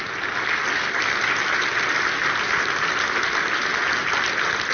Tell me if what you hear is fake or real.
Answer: real